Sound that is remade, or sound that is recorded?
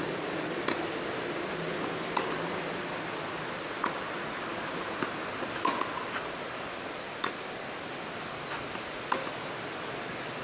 recorded